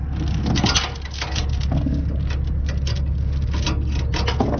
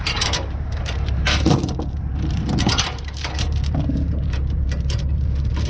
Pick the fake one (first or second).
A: second